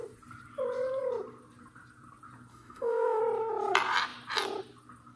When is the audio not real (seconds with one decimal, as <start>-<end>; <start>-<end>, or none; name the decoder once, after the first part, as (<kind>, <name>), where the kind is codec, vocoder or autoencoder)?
2.5-3.2 (autoencoder, DAC-VAE)